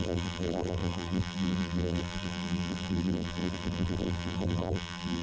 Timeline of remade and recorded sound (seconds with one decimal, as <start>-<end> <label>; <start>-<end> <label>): 0.0-5.2 remade

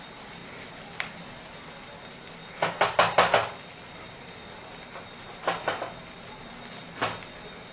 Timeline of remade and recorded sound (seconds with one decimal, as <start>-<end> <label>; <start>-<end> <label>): 0.0-7.7 recorded